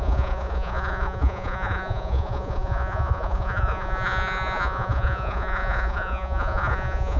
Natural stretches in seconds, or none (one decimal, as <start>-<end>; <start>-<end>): none